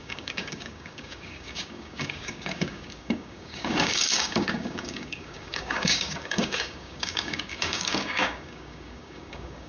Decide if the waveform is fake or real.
fake